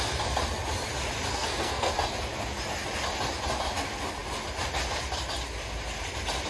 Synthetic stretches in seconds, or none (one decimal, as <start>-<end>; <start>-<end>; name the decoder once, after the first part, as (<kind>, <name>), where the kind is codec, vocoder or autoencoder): 1.3-1.9 (codec, SNAC)